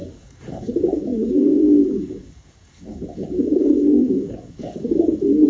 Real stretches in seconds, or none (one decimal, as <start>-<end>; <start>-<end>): none

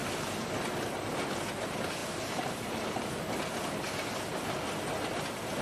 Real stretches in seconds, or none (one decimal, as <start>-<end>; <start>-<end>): 0.0-5.6

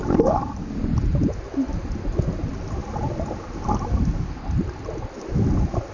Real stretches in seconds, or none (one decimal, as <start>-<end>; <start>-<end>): 0.0-5.9